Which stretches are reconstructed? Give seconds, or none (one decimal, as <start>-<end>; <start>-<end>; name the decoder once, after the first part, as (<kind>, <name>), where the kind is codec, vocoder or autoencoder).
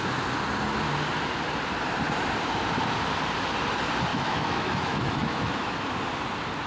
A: 4.1-5.9 (autoencoder, DAC-VAE)